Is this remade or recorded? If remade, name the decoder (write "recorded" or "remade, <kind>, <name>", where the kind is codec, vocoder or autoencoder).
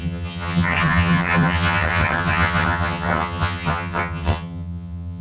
remade, vocoder, HiFi-GAN